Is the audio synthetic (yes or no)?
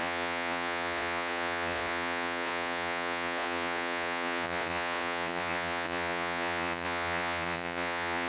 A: yes